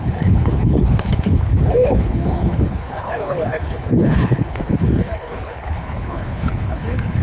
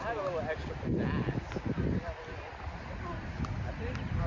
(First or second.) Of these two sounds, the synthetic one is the first